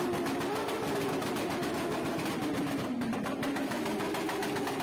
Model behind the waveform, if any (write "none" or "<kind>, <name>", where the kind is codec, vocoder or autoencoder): none